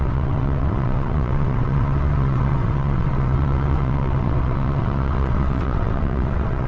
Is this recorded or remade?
remade